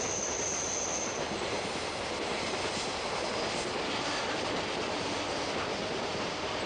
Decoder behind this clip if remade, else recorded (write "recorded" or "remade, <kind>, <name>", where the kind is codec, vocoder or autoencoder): recorded